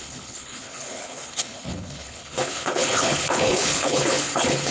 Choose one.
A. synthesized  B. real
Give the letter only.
A